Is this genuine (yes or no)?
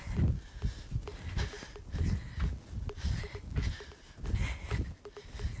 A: yes